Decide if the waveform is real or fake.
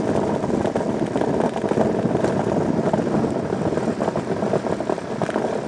real